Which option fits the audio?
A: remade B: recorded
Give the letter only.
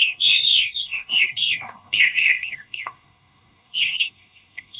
A